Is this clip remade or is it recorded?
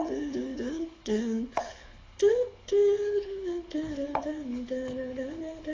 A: remade